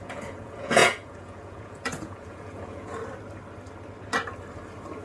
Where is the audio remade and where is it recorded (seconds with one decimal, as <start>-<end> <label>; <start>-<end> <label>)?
0.0-2.9 remade; 2.9-5.0 recorded